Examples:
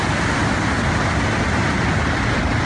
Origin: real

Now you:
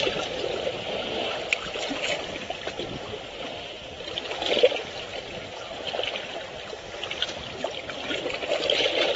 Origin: real